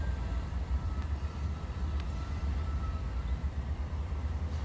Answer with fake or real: fake